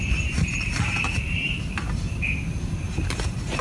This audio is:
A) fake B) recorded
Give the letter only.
A